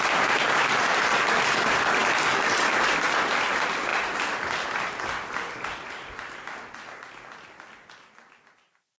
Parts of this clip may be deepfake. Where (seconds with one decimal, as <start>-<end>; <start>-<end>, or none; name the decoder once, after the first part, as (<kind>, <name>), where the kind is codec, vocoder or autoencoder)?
none